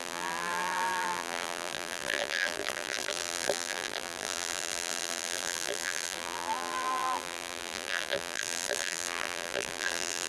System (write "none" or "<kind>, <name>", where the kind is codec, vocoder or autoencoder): vocoder, BigVGAN v2